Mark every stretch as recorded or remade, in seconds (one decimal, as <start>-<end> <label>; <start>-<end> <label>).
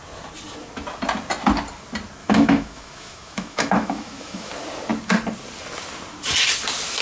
0.0-2.2 recorded; 2.2-4.5 remade; 4.5-7.0 recorded